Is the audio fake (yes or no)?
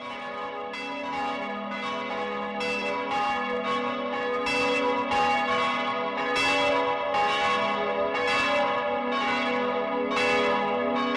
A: no